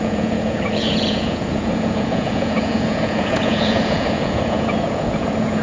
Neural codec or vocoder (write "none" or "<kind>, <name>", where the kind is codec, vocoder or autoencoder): vocoder, Vocos